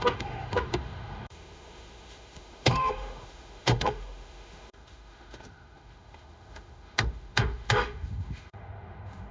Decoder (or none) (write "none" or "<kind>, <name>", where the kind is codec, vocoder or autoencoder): autoencoder, DAC-VAE